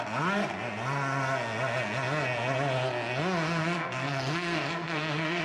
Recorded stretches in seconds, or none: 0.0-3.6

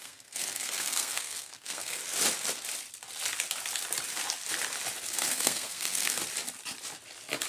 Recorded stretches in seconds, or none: 2.0-5.1; 6.2-7.5

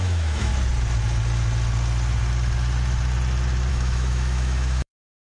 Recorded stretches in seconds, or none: 0.5-3.7

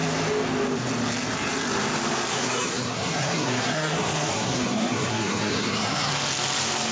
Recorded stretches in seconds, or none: 0.0-2.3; 6.1-6.9